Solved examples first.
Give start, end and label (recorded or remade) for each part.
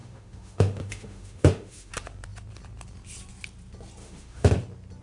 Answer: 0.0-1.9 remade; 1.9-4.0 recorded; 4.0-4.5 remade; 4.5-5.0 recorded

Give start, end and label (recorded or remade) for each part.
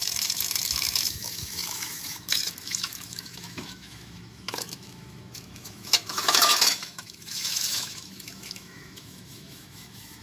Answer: 0.0-10.2 remade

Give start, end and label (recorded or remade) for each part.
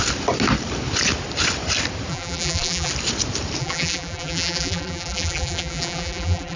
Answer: 0.0-2.1 recorded; 2.1-2.9 remade; 2.9-3.6 recorded; 3.6-6.6 remade